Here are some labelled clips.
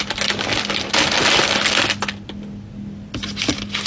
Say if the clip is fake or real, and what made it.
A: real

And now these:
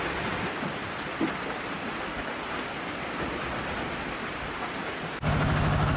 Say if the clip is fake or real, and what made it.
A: real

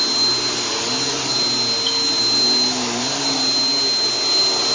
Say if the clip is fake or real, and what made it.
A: real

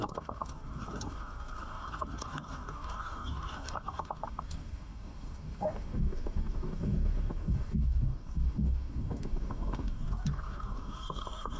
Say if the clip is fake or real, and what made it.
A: fake, codec, DAC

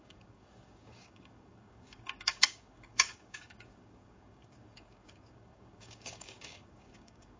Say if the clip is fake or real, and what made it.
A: fake, codec, DAC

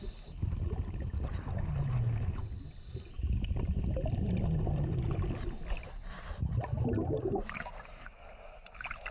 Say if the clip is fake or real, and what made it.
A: real